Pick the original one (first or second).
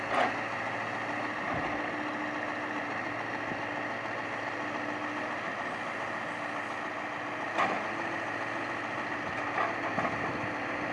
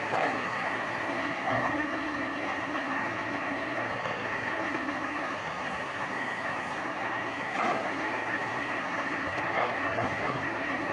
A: first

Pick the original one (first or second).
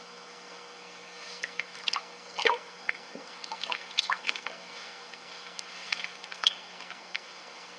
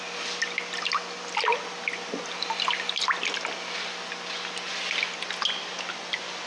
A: second